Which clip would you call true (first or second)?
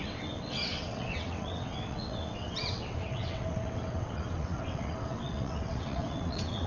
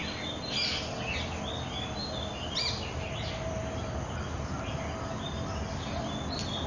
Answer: second